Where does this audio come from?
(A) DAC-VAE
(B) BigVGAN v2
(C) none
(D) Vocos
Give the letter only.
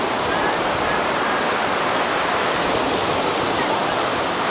B